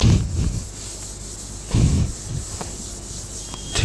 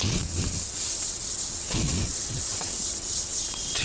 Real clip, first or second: first